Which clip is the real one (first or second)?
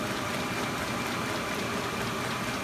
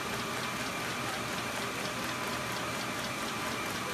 second